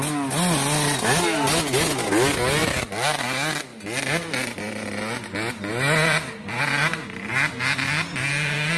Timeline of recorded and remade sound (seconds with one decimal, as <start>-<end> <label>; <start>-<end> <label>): 0.0-8.8 recorded

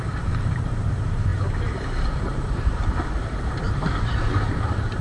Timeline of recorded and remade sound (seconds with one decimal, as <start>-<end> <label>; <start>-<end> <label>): 0.0-5.0 remade